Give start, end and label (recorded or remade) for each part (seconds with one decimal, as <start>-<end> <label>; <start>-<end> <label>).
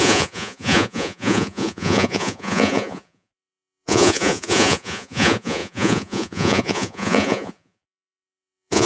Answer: 0.0-8.9 remade